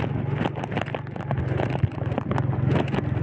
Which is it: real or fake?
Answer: real